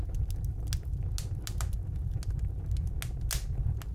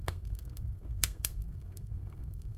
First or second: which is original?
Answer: first